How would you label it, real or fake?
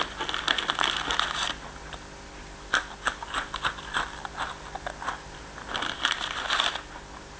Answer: real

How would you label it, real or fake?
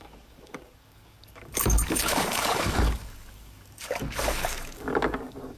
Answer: fake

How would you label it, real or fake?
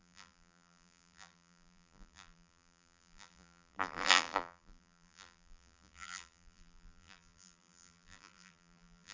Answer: fake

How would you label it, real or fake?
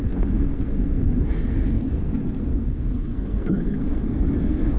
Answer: fake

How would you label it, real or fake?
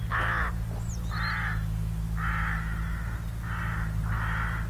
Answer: real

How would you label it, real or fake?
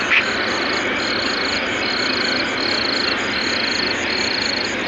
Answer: real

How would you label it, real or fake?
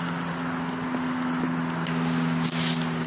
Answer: real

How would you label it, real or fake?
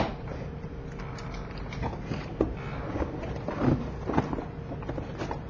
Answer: real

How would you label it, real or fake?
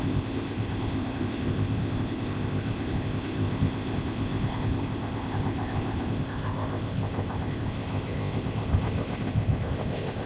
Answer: fake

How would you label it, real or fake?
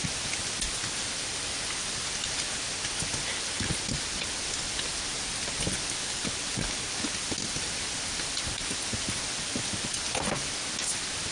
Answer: real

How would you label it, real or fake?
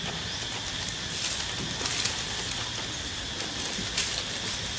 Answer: real